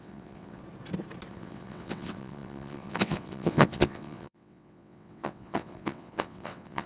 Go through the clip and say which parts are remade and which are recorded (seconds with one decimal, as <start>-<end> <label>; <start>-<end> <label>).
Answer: 0.0-0.6 remade; 0.6-1.3 recorded; 1.3-6.9 remade